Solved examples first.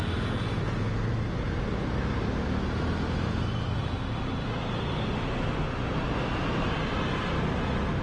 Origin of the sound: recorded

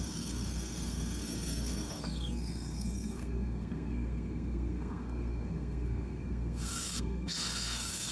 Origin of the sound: remade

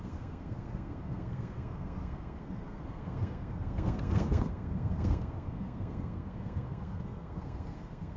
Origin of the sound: remade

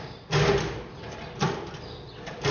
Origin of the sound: recorded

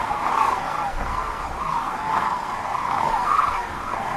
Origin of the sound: remade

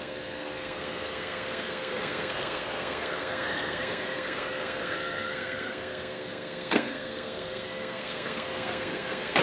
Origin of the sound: remade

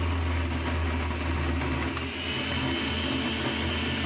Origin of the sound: recorded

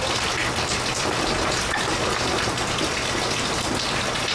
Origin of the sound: recorded